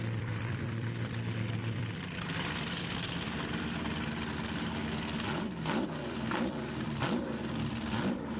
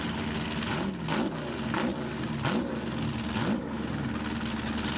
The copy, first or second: first